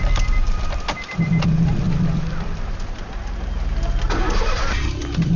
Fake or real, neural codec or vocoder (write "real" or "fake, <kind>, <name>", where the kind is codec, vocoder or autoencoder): real